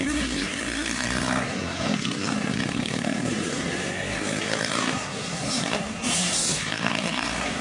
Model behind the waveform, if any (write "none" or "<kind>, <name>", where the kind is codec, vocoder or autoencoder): codec, SNAC